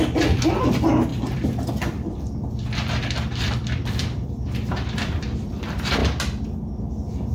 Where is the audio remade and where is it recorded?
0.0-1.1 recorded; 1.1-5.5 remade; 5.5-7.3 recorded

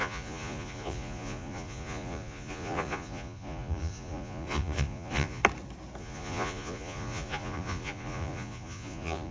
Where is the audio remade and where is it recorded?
0.0-5.4 remade; 5.4-6.0 recorded; 6.0-9.3 remade

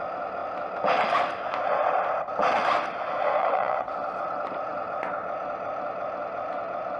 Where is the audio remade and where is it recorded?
0.0-3.4 recorded; 3.4-3.9 remade; 3.9-7.0 recorded

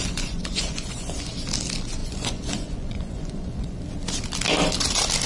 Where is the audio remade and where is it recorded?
0.0-1.3 remade; 1.3-2.0 recorded; 2.0-3.8 remade; 3.8-5.3 recorded